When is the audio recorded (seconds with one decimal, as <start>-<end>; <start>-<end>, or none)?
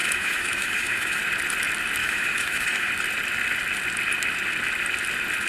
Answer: 1.2-2.0; 2.9-5.5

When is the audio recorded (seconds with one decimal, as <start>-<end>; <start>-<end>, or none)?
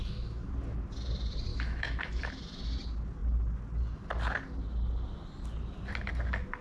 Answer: 0.5-1.5; 2.3-6.6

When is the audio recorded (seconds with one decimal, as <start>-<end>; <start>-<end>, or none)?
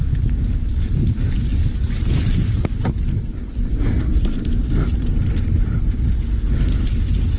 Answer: 0.0-7.4